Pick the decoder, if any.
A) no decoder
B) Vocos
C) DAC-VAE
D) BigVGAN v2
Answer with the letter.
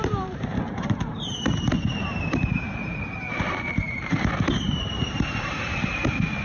D